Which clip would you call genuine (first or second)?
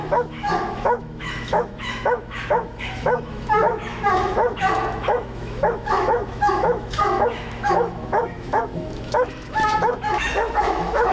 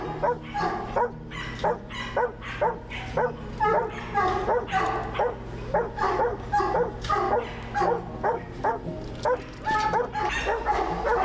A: second